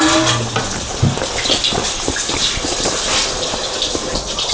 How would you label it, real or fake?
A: real